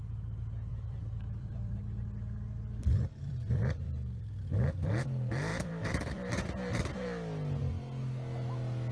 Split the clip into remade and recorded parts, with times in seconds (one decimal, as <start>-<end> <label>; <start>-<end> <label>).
0.0-0.7 recorded; 0.7-4.4 remade; 4.4-5.5 recorded; 5.5-6.4 remade; 6.4-8.9 recorded